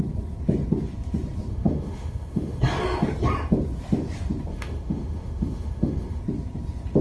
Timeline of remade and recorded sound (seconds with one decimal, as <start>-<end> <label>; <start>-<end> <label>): 0.0-1.5 recorded; 1.5-2.6 remade; 2.6-4.5 recorded; 4.5-6.2 remade; 6.2-7.0 recorded